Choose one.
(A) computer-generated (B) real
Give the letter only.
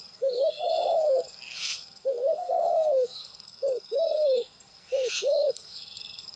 A